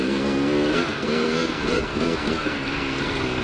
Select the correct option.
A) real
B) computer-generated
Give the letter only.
B